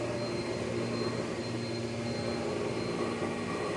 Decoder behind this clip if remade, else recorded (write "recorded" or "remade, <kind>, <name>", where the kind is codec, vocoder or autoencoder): recorded